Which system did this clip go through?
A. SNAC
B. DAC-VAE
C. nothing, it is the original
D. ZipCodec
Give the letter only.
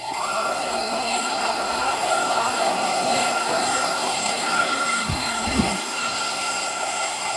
A